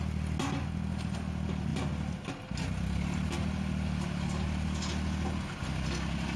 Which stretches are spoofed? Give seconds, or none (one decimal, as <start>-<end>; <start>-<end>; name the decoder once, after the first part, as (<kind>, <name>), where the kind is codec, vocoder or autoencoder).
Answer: none